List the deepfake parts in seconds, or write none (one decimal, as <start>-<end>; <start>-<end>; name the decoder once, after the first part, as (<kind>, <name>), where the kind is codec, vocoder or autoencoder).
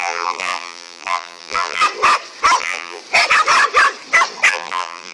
0.0-1.8 (vocoder, BigVGAN v2); 2.6-3.0; 4.5-5.1